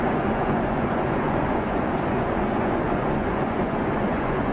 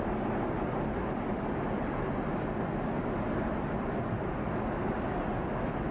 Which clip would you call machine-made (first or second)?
first